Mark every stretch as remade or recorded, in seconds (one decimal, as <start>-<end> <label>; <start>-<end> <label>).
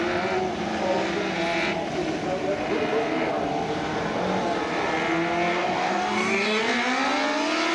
0.0-5.5 recorded; 5.5-6.6 remade; 6.6-7.7 recorded